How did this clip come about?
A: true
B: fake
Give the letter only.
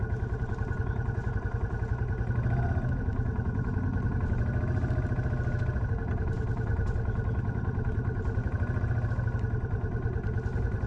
A